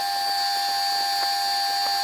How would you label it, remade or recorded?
recorded